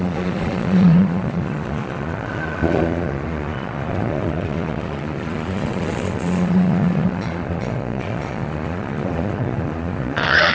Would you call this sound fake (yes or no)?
yes